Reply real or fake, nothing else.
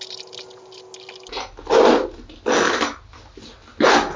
real